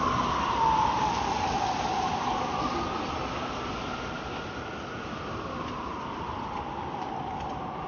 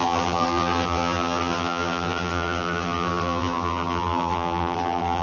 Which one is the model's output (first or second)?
second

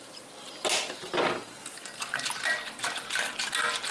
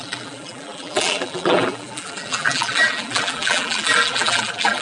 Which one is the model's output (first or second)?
second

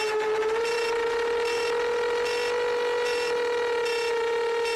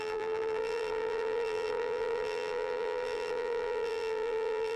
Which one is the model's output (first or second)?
second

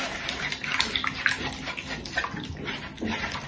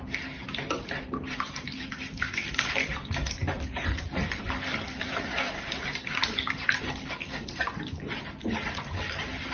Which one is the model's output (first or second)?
second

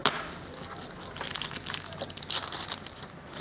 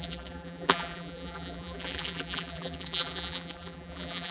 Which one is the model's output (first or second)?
second